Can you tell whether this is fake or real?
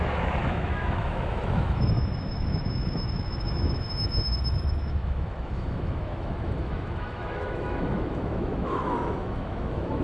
fake